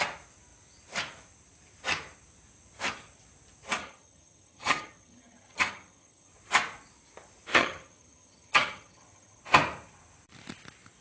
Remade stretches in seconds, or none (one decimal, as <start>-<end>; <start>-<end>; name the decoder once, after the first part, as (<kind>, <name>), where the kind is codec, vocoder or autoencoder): 3.8-6.3 (vocoder, HiFi-GAN); 7.5-9.4